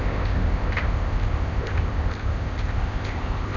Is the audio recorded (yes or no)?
no